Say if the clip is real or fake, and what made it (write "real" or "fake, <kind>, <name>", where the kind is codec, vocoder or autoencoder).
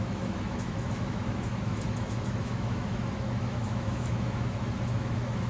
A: fake, autoencoder, DAC-VAE